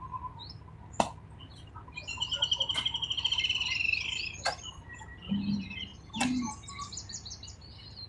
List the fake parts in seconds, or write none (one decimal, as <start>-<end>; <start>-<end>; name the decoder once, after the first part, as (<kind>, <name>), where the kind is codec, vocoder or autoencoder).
none